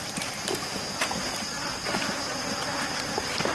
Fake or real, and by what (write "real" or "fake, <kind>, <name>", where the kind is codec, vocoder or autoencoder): real